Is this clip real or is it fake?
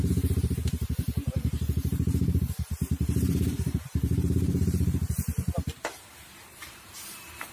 fake